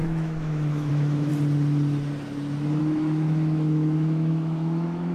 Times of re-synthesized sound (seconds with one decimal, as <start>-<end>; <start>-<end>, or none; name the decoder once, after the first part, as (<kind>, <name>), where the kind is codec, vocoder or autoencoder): 0.0-1.3 (autoencoder, DAC-VAE); 2.8-5.1